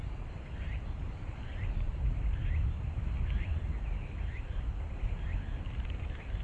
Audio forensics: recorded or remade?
recorded